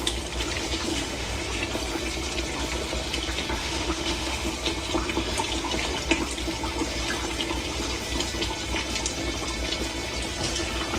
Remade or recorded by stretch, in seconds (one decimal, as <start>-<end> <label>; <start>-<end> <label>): 0.0-0.9 recorded; 0.9-1.4 remade; 1.4-3.6 recorded; 3.6-4.5 remade; 4.5-11.0 recorded